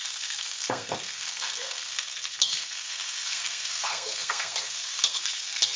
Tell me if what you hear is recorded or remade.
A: remade